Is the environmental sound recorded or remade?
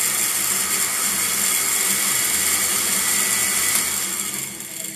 recorded